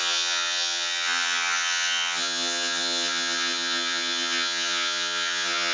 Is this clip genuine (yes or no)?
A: no